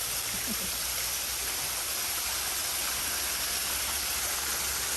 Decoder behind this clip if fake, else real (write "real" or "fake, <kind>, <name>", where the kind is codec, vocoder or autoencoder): real